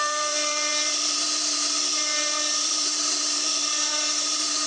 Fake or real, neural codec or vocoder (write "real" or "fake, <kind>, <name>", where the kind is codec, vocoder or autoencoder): fake, vocoder, BigVGAN v2